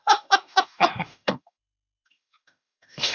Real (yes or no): no